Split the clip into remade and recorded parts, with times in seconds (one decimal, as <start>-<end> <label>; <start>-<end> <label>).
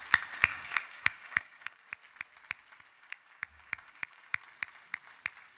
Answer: 0.0-0.5 recorded; 0.5-1.9 remade; 1.9-2.9 recorded; 2.9-4.4 remade; 4.4-5.6 recorded